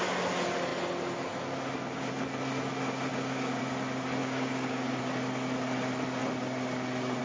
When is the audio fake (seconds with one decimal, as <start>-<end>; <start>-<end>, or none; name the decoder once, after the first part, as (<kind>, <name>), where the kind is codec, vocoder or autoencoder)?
3.1-3.6 (codec, DAC); 4.2-5.0